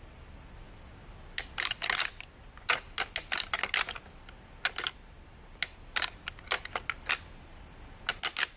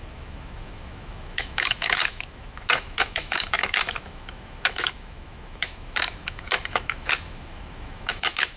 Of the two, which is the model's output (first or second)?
second